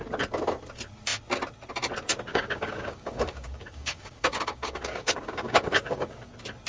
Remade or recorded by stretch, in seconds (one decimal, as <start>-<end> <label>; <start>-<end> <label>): 0.0-2.3 recorded; 2.3-6.3 remade; 6.3-6.7 recorded